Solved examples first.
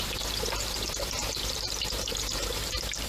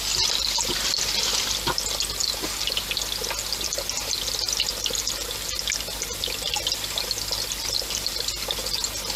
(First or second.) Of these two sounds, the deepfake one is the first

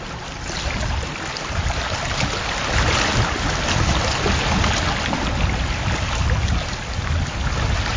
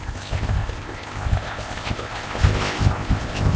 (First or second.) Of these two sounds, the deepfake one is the second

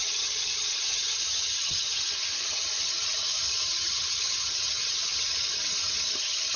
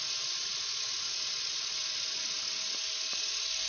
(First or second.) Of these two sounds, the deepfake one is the first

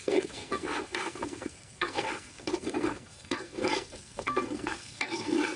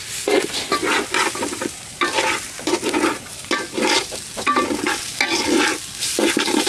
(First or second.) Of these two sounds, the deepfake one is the first